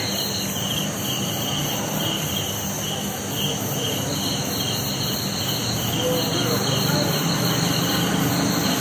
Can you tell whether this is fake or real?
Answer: real